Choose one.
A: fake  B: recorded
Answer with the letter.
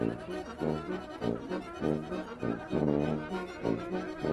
B